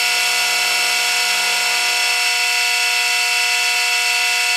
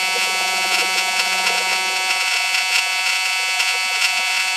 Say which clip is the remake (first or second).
second